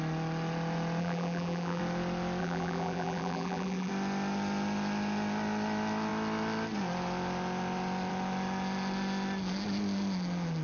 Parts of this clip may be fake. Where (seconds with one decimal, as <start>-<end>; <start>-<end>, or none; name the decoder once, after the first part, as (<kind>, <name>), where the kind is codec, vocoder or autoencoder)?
1.0-1.8 (vocoder, BigVGAN v2); 2.4-3.9